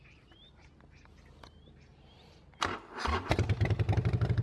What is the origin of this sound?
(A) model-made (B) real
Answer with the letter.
B